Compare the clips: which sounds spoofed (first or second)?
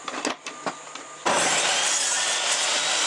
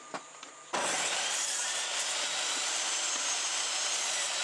second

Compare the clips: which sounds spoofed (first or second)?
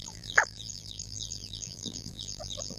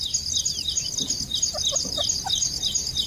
first